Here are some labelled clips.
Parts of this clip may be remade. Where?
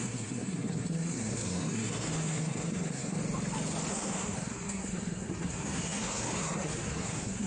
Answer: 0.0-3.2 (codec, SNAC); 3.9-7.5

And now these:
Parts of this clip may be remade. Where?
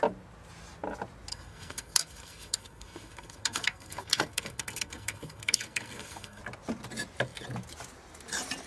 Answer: 1.3-6.4 (codec, SNAC)